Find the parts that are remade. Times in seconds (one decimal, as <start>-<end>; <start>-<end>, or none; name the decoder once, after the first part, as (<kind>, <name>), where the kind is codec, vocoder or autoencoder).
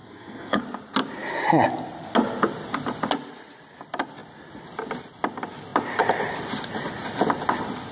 0.0-0.6 (codec, SNAC)